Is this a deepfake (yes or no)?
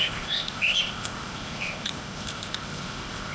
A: yes